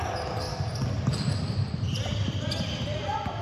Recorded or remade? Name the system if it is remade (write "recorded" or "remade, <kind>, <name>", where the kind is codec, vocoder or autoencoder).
recorded